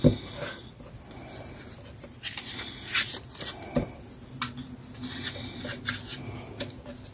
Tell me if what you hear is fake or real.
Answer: real